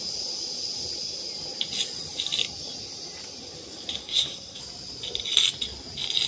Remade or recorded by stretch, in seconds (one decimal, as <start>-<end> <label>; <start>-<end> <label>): 0.0-4.0 recorded; 4.0-4.6 remade; 4.6-6.3 recorded